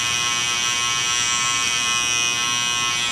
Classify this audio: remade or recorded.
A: recorded